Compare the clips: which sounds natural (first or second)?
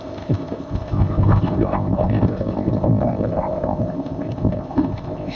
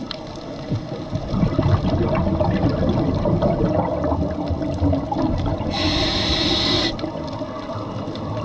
second